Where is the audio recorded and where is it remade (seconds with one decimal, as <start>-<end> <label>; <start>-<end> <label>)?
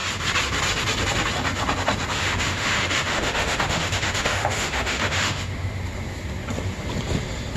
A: 0.0-2.1 recorded; 2.1-5.8 remade; 5.8-7.6 recorded